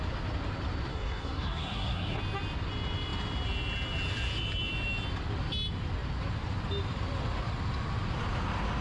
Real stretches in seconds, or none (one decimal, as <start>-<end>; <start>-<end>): 0.0-0.9; 2.2-8.8